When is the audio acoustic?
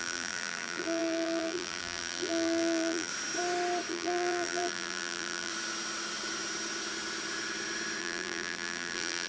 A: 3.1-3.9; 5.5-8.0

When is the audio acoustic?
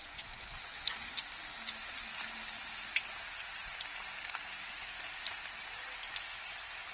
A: 1.2-6.9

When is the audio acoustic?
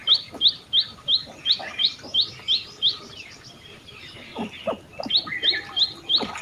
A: 0.0-6.4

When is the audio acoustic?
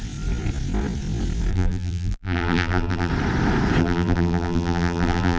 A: 0.0-1.5; 3.1-3.8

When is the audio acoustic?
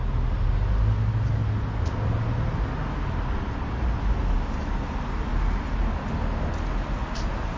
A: 0.0-7.6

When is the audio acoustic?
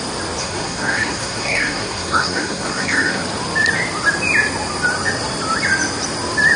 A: 0.0-0.4; 3.2-6.6